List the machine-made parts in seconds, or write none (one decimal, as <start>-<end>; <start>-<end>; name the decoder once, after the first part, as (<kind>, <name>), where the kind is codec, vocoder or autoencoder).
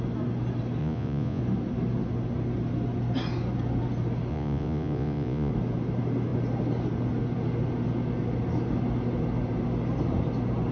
0.8-1.4 (vocoder, Vocos); 4.3-5.5